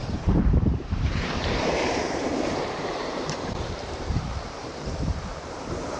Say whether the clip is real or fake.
fake